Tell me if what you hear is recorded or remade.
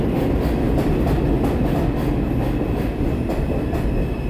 recorded